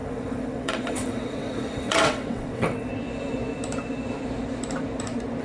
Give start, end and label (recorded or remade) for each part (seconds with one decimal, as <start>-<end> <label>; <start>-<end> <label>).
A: 0.0-2.9 remade; 2.9-5.4 recorded